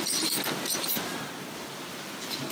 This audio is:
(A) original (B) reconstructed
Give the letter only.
A